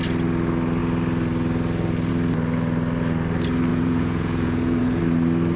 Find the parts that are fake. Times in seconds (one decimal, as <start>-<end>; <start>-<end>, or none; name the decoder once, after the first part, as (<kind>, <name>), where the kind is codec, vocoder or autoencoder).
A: 3.7-5.0 (vocoder, Vocos)